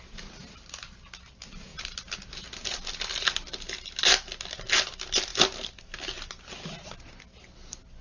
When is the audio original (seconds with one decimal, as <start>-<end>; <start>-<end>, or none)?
0.0-8.0